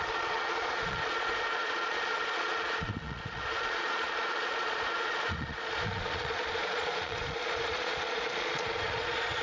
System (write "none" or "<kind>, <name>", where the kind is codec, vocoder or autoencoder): vocoder, Vocos